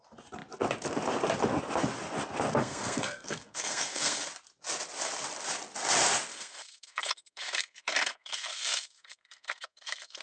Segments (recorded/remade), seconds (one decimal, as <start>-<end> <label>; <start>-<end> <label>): 0.0-2.6 recorded; 2.6-4.3 remade; 4.3-6.3 recorded; 6.3-10.2 remade